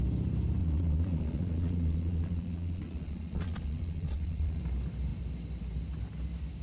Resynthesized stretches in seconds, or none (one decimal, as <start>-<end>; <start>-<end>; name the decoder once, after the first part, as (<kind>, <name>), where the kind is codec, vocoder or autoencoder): 0.6-4.6 (vocoder, Vocos)